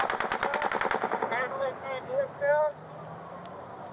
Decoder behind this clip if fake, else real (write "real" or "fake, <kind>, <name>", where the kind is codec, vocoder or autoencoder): real